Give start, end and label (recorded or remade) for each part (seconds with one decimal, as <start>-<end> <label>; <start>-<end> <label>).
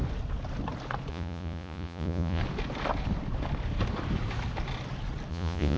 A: 0.0-1.1 recorded; 1.1-2.4 remade; 2.4-5.3 recorded; 5.3-5.8 remade